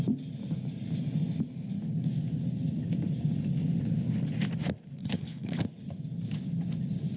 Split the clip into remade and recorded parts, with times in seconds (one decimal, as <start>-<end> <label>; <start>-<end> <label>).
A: 0.0-5.0 recorded; 5.0-5.6 remade; 5.6-7.2 recorded